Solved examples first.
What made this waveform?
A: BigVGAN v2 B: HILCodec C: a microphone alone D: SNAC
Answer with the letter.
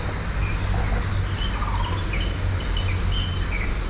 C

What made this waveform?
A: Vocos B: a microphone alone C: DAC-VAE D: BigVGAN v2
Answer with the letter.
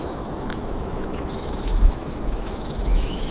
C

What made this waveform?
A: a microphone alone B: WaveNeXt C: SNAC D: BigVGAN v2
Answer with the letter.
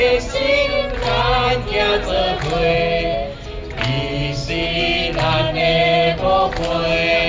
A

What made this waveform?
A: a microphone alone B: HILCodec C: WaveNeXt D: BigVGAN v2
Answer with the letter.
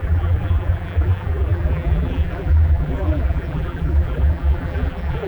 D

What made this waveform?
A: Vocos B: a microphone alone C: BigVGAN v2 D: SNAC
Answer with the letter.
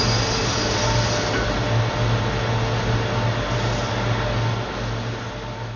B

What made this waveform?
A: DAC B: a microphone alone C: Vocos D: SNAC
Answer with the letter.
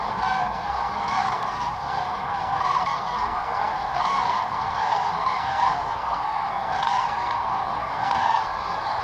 D